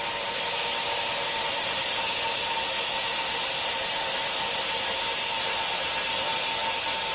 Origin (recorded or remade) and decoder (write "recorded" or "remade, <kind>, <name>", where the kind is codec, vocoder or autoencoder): recorded